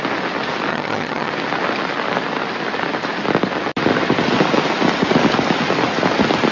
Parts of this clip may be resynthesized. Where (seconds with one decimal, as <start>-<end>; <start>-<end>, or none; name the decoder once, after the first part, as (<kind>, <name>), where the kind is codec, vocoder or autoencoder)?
0.7-1.3 (vocoder, HiFi-GAN)